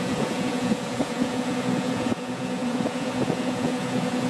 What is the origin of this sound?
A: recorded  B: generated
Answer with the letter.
B